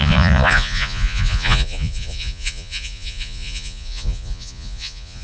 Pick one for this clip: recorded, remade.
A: remade